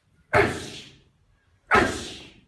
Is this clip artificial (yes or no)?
no